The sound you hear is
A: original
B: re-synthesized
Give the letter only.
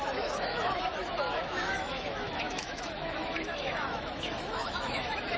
B